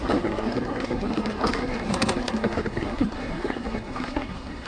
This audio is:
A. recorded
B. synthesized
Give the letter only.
B